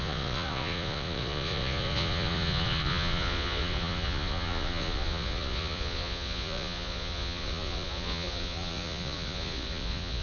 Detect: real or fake fake